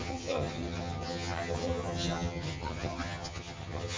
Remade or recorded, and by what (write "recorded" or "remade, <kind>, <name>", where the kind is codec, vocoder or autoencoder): remade, vocoder, HiFi-GAN